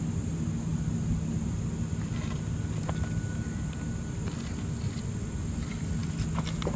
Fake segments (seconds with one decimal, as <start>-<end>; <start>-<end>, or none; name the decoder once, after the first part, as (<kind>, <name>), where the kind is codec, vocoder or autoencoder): none